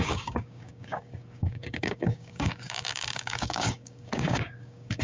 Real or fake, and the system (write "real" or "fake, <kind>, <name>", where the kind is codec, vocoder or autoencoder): fake, codec, DAC